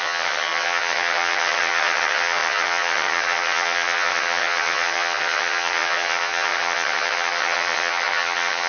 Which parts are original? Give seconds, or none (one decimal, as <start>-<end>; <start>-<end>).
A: none